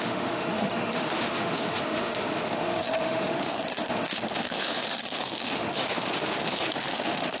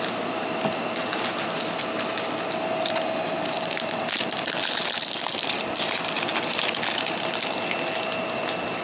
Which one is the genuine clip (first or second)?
second